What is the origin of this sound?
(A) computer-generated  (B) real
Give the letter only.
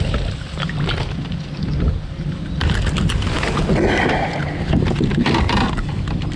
B